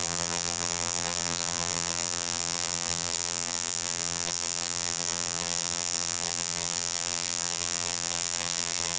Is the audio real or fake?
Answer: fake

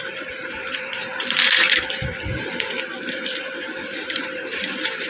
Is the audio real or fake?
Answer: fake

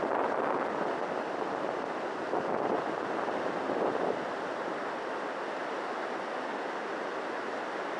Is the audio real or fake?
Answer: fake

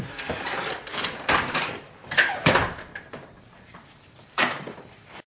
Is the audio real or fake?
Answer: fake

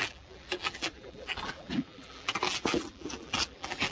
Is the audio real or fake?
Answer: fake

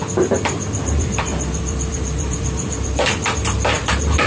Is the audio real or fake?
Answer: fake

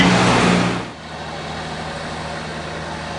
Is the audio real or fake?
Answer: real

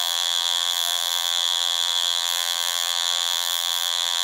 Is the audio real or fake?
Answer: fake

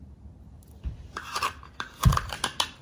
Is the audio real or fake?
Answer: fake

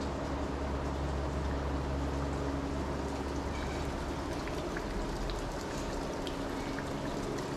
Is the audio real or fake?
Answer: real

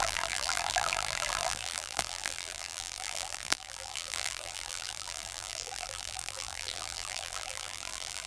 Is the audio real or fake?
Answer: fake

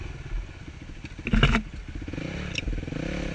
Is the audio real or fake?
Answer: real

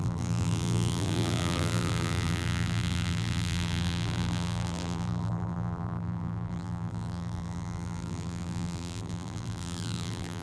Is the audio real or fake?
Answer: fake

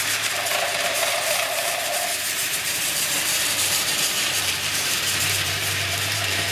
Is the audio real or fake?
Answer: fake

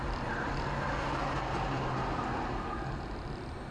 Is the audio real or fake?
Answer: real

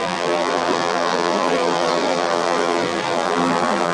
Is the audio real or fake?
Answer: fake